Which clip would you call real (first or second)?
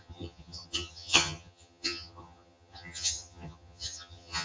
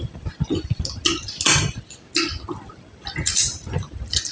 second